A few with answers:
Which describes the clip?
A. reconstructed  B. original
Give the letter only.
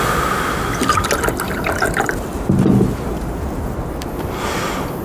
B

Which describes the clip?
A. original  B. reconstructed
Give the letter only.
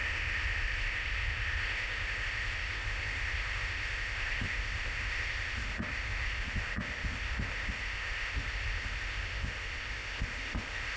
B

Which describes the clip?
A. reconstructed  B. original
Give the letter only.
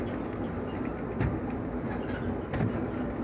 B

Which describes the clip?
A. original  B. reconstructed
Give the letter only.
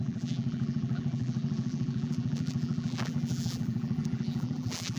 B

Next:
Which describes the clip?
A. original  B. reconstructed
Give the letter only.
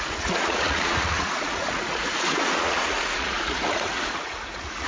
B